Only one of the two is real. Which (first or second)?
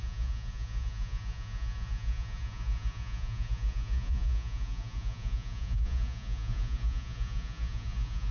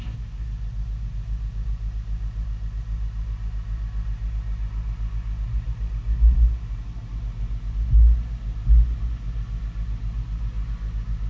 second